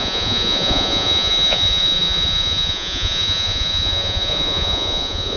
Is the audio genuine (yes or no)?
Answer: no